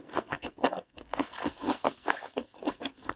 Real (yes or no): no